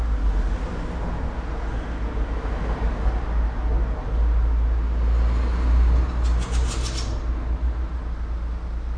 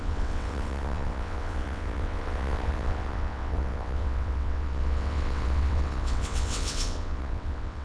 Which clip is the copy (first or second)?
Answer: second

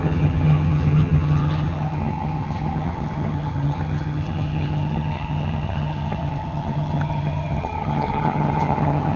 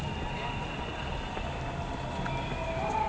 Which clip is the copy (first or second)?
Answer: first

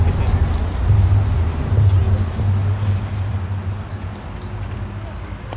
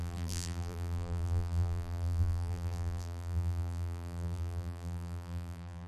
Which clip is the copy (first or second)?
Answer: second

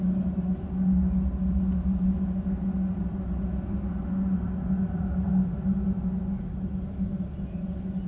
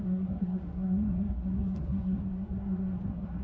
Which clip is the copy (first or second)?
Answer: second